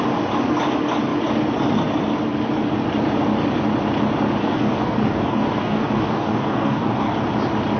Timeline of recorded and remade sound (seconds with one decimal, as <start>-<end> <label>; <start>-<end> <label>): 0.0-4.4 recorded; 4.4-7.1 remade; 7.1-7.8 recorded